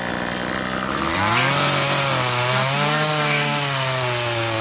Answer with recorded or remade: recorded